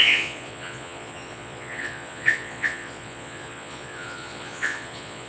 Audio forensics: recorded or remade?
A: remade